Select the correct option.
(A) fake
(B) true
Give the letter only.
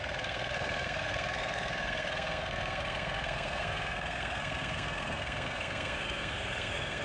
A